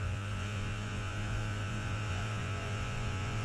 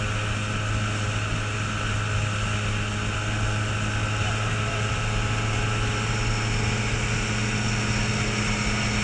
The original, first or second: second